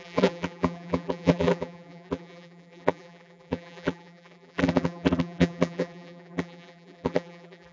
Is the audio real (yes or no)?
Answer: no